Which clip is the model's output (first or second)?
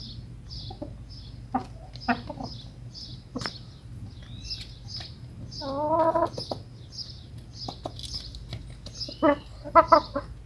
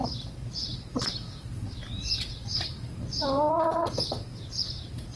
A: second